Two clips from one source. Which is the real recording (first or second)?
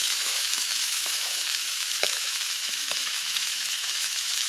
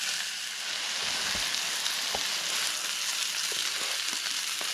second